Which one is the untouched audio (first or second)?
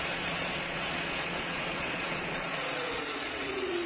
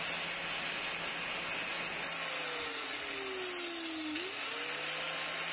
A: second